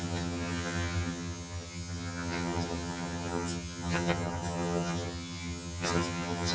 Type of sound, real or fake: fake